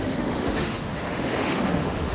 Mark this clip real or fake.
fake